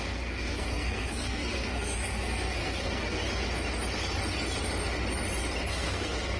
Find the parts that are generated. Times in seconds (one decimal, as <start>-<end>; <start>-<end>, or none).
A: 0.0-3.2; 5.7-6.4